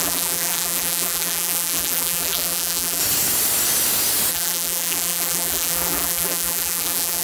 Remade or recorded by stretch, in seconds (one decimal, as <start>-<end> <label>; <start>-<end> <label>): 0.0-3.0 remade; 3.0-4.3 recorded; 4.3-7.2 remade